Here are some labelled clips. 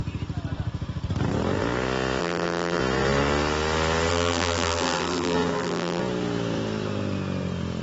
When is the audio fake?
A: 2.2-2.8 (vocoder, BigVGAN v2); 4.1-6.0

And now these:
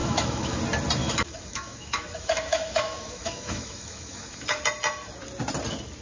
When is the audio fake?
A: 0.0-0.6 (autoencoder, DAC-VAE); 1.0-4.6

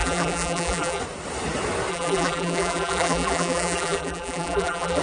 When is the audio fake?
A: 0.0-1.0 (vocoder, BigVGAN v2); 1.9-5.0